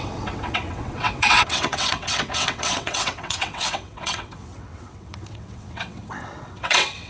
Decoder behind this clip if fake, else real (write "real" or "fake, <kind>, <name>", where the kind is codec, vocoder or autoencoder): fake, vocoder, WaveNeXt